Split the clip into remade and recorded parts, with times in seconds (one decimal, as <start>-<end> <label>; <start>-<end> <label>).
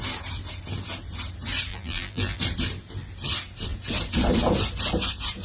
0.0-1.7 recorded; 1.7-2.4 remade; 2.4-5.4 recorded